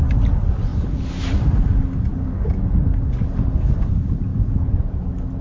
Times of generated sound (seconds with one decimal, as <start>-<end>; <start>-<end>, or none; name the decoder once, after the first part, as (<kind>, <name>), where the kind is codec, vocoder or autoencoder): 4.3-5.0 (vocoder, Vocos)

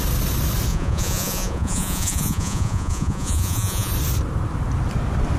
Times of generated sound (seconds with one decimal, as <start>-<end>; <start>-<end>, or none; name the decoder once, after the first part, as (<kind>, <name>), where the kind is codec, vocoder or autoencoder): 0.7-3.9 (vocoder, Vocos)

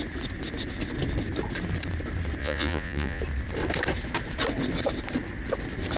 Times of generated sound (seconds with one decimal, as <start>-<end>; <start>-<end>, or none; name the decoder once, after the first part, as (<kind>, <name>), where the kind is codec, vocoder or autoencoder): 2.4-3.2 (vocoder, Vocos)

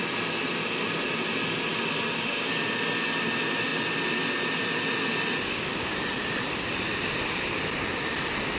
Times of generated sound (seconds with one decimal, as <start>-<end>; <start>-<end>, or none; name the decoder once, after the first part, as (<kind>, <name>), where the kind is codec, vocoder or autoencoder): none

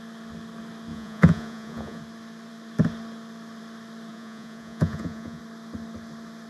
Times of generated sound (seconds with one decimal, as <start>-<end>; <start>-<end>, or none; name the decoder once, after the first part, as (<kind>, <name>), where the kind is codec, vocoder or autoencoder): 0.9-2.0 (vocoder, Vocos); 4.1-5.4